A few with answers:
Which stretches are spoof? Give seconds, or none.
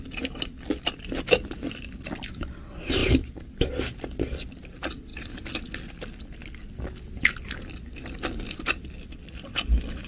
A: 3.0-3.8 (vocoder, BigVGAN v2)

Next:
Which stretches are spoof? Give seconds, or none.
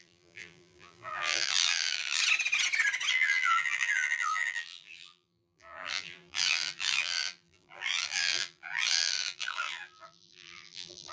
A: 0.0-2.2 (vocoder, BigVGAN v2); 3.1-11.1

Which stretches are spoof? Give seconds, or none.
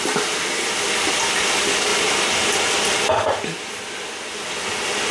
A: 1.9-4.3 (vocoder, BigVGAN v2)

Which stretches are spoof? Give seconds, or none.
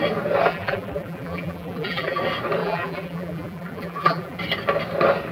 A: 0.5-2.2 (vocoder, BigVGAN v2); 2.6-4.4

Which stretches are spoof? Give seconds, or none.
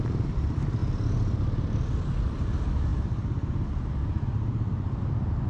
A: none